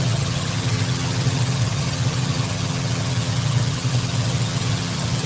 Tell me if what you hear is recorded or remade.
remade